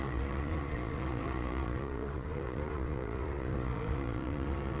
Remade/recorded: remade